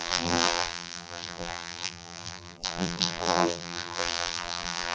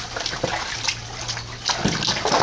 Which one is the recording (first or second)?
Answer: second